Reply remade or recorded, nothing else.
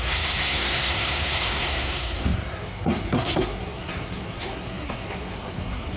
remade